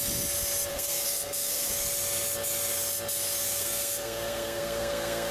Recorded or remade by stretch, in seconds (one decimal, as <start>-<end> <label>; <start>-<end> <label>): 0.0-0.7 recorded; 0.7-1.7 remade; 1.7-3.4 recorded; 3.4-5.3 remade